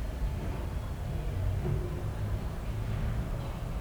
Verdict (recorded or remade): recorded